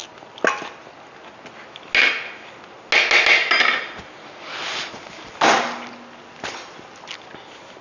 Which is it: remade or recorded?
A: recorded